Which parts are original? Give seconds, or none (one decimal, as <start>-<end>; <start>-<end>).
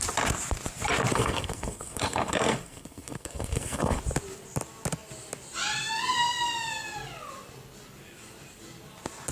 0.0-1.1; 4.0-9.3